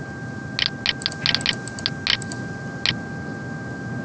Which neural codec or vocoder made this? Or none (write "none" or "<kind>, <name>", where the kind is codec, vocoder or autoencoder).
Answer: none